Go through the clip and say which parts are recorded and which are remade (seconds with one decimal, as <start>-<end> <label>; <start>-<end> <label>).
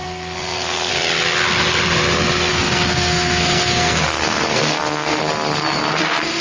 0.0-0.9 remade; 0.9-2.5 recorded; 2.5-5.2 remade; 5.2-6.4 recorded